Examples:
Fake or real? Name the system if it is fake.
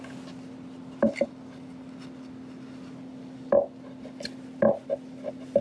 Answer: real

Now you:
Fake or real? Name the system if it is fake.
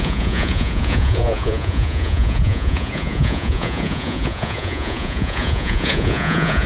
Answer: fake, vocoder, Vocos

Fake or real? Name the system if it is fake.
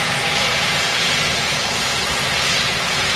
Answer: fake, vocoder, Vocos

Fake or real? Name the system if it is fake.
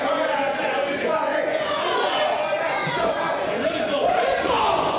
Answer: fake, vocoder, Vocos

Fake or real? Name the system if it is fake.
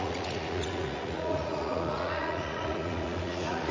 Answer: fake, vocoder, Vocos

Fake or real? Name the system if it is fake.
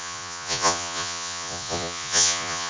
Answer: fake, vocoder, Vocos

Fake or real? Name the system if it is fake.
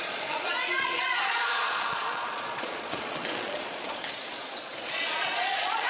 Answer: fake, vocoder, Vocos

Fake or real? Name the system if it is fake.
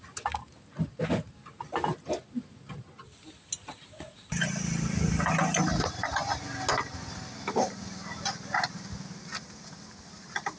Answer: real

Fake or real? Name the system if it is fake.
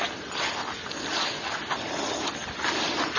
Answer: real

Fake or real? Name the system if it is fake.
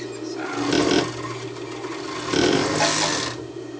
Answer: real